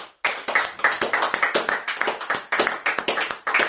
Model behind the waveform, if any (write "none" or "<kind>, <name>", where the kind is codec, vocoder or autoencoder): none